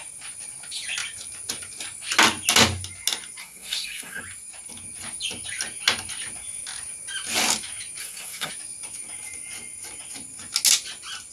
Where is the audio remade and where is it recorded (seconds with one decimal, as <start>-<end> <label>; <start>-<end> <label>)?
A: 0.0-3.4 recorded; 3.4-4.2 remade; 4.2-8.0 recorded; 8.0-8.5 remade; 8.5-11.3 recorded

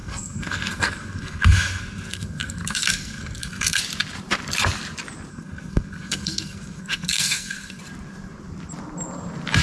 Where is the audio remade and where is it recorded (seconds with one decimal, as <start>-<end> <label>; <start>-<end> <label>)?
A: 0.0-3.8 remade; 3.8-5.3 recorded; 5.3-7.8 remade; 7.8-9.6 recorded

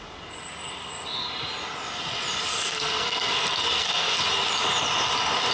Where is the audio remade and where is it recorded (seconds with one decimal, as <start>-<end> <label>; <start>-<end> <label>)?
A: 0.0-2.5 recorded; 2.5-4.2 remade; 4.2-5.5 recorded

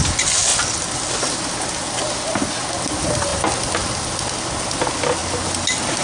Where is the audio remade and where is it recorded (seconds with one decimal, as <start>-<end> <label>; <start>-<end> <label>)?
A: 0.0-6.0 recorded

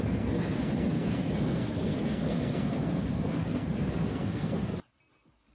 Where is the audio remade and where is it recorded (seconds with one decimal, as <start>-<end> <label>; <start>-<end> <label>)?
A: 0.0-4.7 remade; 4.7-5.5 recorded

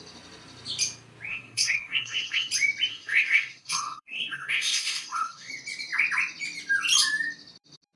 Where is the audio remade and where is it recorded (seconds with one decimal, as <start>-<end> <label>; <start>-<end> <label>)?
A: 0.0-1.3 recorded; 1.3-2.5 remade; 2.5-2.9 recorded; 2.9-5.5 remade; 5.5-8.0 recorded